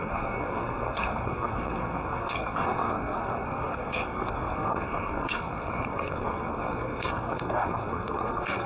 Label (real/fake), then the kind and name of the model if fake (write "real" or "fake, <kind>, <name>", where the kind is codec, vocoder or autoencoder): fake, codec, SNAC